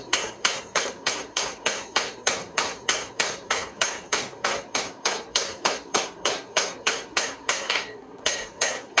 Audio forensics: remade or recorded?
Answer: remade